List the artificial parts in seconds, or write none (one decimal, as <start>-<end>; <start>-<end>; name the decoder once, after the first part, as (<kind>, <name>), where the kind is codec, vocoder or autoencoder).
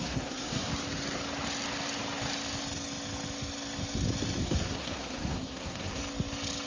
0.0-0.7 (codec, SNAC); 4.4-6.0